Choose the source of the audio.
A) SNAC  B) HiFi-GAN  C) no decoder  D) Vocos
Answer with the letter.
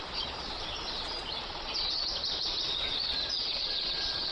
D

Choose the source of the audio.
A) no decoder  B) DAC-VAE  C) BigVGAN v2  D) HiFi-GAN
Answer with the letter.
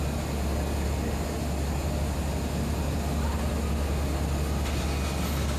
A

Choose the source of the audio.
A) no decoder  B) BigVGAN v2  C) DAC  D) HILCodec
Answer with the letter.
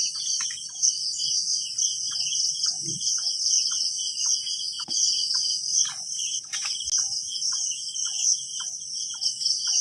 A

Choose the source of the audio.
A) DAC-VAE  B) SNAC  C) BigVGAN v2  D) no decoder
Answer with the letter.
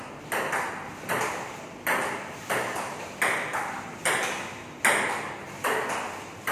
D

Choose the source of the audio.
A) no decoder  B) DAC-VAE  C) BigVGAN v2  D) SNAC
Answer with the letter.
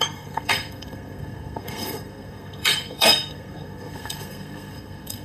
D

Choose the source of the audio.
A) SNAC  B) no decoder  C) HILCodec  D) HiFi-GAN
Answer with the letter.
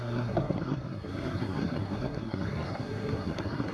A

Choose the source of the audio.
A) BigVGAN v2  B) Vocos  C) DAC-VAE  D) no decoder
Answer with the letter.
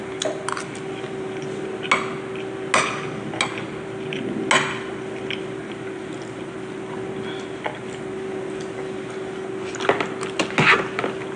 D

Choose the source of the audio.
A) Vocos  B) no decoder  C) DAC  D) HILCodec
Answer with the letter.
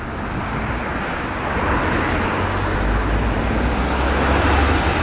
B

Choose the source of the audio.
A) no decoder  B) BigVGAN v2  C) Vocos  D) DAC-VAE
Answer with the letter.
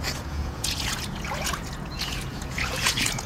C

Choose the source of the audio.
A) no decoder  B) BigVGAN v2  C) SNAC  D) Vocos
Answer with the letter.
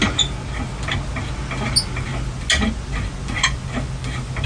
A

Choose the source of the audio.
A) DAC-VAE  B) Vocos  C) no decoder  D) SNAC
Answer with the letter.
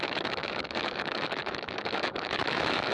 A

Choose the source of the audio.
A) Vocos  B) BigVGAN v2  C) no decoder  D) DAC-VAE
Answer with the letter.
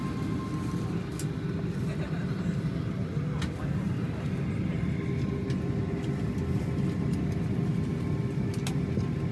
C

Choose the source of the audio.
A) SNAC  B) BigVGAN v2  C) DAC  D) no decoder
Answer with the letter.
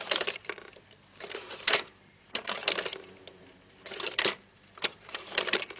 B